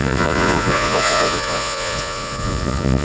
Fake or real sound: fake